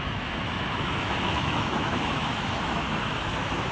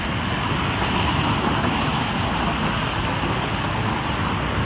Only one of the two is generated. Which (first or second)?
first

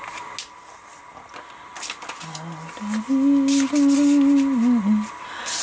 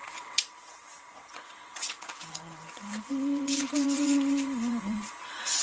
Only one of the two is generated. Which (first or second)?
second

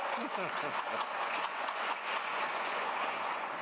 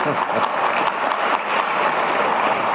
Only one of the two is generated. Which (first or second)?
first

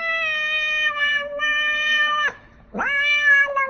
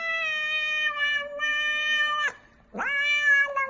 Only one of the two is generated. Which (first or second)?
first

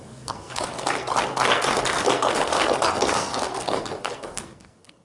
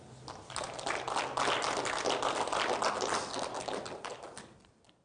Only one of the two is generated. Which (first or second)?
first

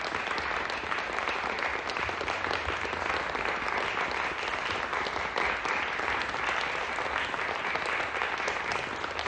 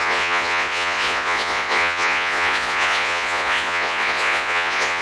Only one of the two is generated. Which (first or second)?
second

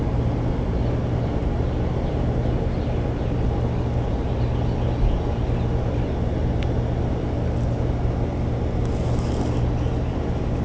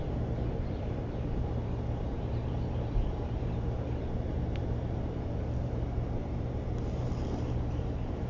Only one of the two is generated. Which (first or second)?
second